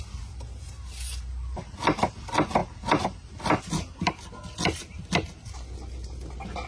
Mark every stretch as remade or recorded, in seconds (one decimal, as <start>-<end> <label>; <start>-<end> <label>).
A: 0.0-6.7 recorded